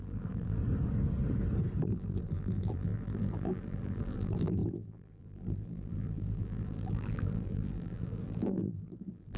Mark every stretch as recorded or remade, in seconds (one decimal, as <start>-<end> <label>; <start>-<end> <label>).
0.0-0.6 remade; 0.6-1.8 recorded; 1.8-9.4 remade

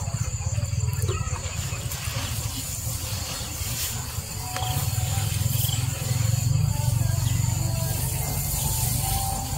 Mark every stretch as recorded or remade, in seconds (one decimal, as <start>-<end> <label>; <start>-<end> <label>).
0.0-9.6 recorded

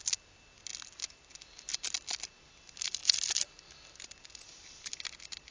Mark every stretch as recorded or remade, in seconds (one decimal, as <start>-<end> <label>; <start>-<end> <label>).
0.0-5.5 recorded